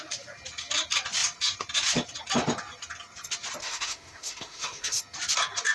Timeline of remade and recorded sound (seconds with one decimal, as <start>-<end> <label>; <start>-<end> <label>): 0.0-3.6 recorded; 3.6-5.0 remade; 5.0-5.7 recorded